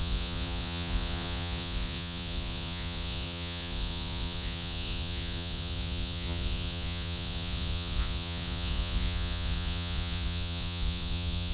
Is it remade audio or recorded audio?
remade